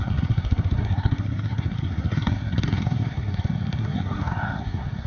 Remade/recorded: remade